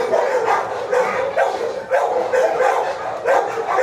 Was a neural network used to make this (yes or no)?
no